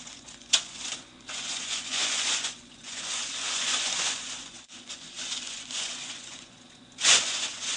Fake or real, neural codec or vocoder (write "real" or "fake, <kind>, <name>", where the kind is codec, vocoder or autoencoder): fake, vocoder, Vocos